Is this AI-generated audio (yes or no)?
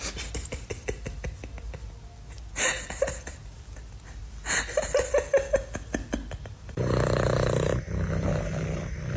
no